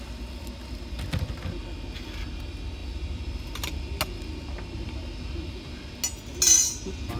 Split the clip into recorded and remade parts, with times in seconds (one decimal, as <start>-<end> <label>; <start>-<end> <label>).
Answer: 0.0-7.2 recorded